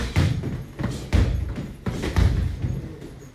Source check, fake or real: real